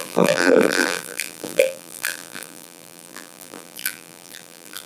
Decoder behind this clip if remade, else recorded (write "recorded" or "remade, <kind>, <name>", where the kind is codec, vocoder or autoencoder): remade, vocoder, BigVGAN v2